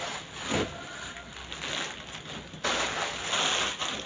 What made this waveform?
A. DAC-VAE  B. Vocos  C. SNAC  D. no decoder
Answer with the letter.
D